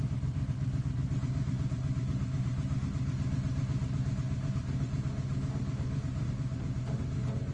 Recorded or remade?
recorded